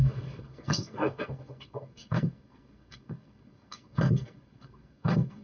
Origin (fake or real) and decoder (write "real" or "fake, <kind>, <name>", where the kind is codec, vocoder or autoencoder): fake, codec, SNAC